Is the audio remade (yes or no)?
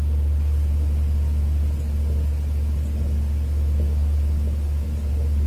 no